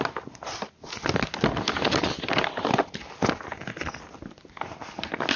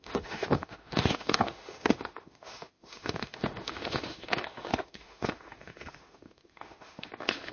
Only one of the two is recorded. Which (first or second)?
first